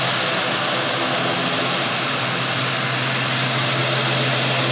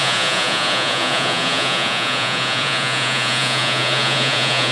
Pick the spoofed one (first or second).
second